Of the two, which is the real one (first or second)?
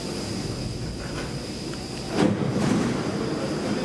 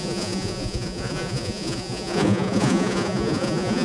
first